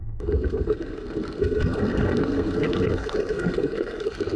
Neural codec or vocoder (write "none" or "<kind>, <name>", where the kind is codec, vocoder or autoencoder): codec, SNAC